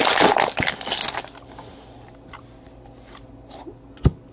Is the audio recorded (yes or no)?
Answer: yes